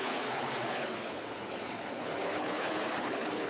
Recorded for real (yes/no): no